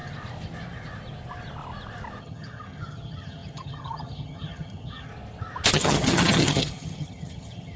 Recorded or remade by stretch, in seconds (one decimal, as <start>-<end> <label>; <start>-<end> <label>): 0.0-2.2 recorded; 2.2-5.1 remade; 5.1-5.7 recorded; 5.7-7.8 remade